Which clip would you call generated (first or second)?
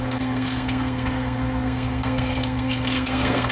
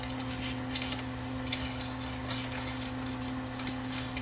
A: first